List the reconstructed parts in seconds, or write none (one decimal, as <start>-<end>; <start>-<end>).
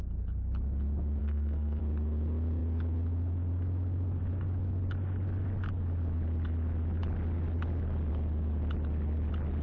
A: 1.2-1.8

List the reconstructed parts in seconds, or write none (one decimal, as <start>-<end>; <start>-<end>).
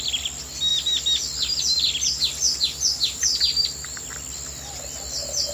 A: none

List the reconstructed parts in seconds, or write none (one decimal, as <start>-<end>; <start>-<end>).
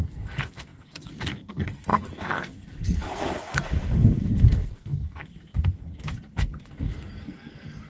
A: 0.0-7.9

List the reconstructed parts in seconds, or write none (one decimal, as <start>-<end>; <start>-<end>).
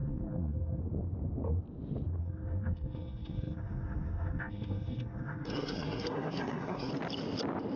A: 0.0-0.8; 2.2-6.9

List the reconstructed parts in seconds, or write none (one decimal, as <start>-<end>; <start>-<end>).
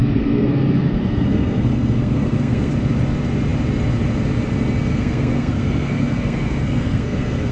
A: 0.0-2.7; 4.9-7.5